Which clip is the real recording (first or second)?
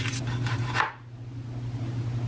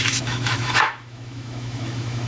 first